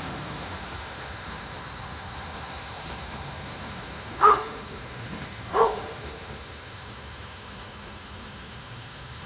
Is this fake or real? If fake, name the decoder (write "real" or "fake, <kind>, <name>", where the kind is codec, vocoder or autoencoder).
fake, autoencoder, DAC-VAE